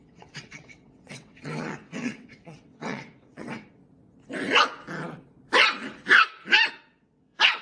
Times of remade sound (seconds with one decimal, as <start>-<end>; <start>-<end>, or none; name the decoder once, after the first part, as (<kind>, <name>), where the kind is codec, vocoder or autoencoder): 0.0-3.8 (vocoder, WaveNeXt); 6.7-7.6